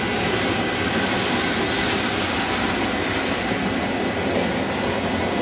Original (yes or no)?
yes